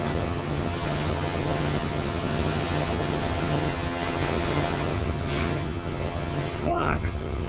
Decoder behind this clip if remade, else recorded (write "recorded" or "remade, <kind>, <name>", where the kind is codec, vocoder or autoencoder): remade, vocoder, HiFi-GAN